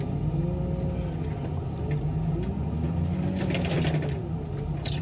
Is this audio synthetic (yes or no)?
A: no